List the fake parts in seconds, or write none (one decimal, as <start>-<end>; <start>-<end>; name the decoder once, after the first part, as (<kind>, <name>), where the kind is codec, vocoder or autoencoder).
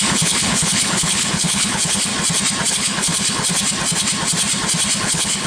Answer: 0.0-2.1 (codec, HILCodec); 2.7-3.5; 5.0-5.5